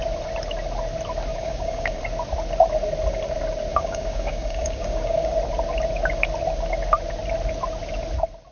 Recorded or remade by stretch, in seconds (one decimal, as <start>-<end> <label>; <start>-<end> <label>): 0.0-1.3 recorded; 1.3-2.0 remade; 2.0-3.7 recorded; 3.7-5.3 remade; 5.3-8.5 recorded